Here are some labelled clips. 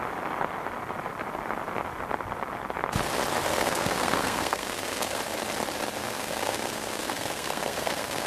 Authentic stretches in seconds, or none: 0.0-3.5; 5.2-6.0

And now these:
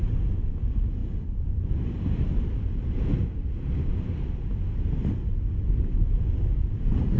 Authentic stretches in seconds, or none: 0.0-7.2

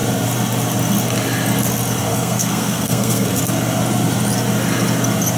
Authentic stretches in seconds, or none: 0.0-2.1; 3.4-5.4

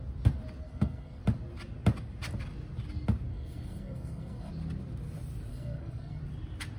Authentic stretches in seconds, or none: 0.0-0.6; 1.2-3.3; 4.5-5.5; 6.2-6.8

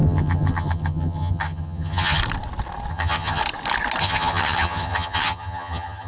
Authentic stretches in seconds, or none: 2.2-2.9; 3.4-4.0

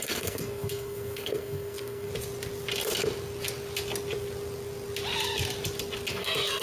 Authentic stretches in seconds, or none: 2.1-6.1